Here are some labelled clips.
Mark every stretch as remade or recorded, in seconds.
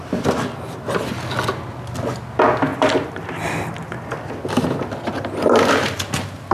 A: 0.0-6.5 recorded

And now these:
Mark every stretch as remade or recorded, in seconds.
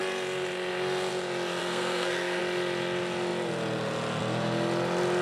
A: 0.0-1.6 recorded; 1.6-2.4 remade; 2.4-5.2 recorded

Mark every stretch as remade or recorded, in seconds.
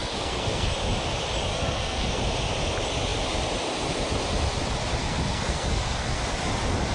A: 0.0-0.7 remade; 0.7-1.5 recorded; 1.5-2.2 remade; 2.2-5.0 recorded; 5.0-6.2 remade; 6.2-6.9 recorded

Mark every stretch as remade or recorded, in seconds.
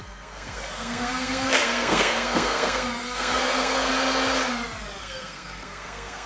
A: 0.0-3.9 remade; 3.9-5.0 recorded; 5.0-6.3 remade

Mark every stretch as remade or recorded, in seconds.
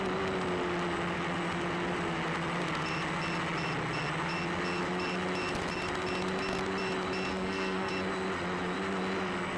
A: 0.0-7.3 recorded; 7.3-7.9 remade; 7.9-9.6 recorded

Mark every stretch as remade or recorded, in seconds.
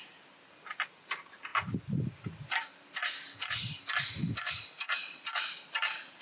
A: 0.0-6.2 recorded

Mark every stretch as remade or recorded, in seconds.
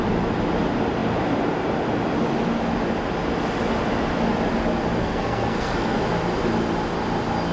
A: 0.0-5.0 recorded; 5.0-6.0 remade; 6.0-7.5 recorded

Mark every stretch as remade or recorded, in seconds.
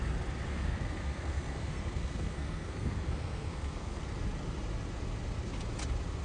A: 0.0-0.5 recorded; 0.5-4.0 remade; 4.0-6.2 recorded